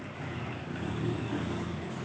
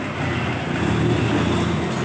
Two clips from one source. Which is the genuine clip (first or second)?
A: second